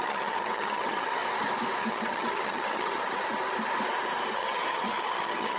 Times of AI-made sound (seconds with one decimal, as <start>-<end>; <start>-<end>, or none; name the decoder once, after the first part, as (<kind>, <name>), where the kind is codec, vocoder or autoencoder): 0.0-1.2 (vocoder, HiFi-GAN); 1.8-3.0; 4.3-5.6